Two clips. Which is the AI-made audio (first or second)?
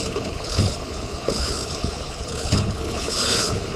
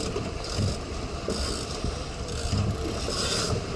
first